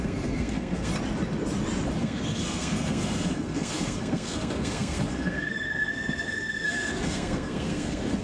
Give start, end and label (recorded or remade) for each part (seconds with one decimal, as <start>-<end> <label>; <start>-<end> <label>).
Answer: 0.0-0.9 remade; 0.9-2.0 recorded; 2.0-8.2 remade

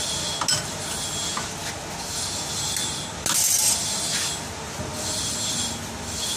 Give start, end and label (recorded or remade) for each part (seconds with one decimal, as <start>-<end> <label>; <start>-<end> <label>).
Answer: 0.0-6.4 recorded

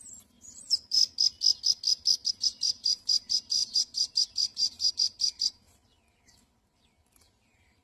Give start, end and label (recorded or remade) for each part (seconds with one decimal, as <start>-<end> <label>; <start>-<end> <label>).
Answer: 0.0-1.0 remade; 1.0-2.3 recorded; 2.3-7.8 remade

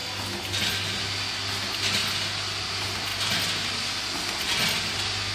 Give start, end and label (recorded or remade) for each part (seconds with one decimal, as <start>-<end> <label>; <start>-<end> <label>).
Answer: 0.0-5.3 recorded

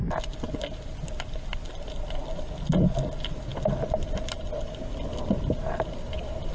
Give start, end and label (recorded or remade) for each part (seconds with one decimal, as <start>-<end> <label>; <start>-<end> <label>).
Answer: 0.0-6.5 recorded

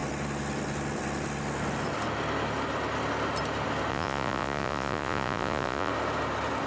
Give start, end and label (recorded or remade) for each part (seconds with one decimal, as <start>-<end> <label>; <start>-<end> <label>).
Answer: 0.0-3.9 recorded; 3.9-5.9 remade; 5.9-6.7 recorded

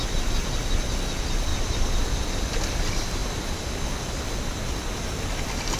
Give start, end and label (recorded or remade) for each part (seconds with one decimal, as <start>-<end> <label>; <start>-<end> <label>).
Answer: 0.0-1.5 recorded; 1.5-2.2 remade; 2.2-5.8 recorded